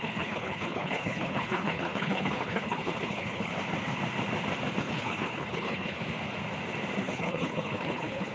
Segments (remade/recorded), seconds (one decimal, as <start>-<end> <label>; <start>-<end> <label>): 0.0-3.5 remade; 3.5-4.8 recorded; 4.8-6.0 remade; 6.0-7.0 recorded; 7.0-8.3 remade